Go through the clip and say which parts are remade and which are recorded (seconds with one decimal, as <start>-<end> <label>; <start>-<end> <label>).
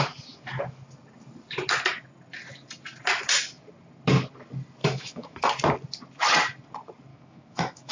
0.0-4.8 recorded; 4.8-5.5 remade; 5.5-7.1 recorded; 7.1-7.9 remade